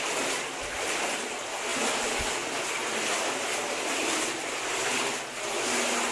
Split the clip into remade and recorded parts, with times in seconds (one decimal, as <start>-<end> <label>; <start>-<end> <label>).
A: 0.0-4.0 recorded; 4.0-4.9 remade; 4.9-6.1 recorded